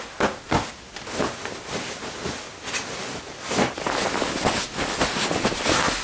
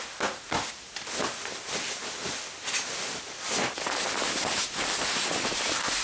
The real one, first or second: first